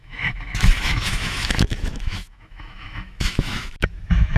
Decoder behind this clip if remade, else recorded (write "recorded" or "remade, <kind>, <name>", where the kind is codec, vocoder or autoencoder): remade, autoencoder, DAC-VAE